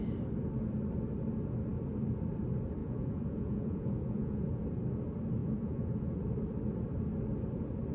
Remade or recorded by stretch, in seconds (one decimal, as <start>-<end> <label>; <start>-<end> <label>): 0.0-2.8 recorded; 2.8-4.6 remade; 4.6-5.4 recorded; 5.4-6.2 remade; 6.2-7.9 recorded